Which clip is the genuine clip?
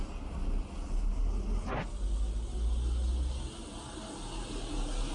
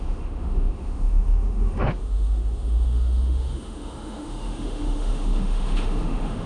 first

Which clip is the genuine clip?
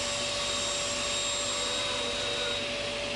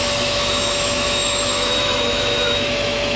first